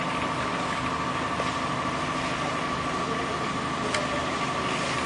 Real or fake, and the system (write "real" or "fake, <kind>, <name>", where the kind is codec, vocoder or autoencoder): real